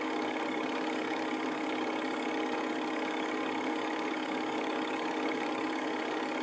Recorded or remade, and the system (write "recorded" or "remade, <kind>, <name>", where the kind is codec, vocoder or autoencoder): remade, codec, DAC